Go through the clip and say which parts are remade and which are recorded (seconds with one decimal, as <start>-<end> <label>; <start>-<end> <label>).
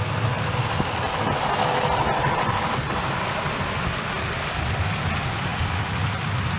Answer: 0.0-6.6 recorded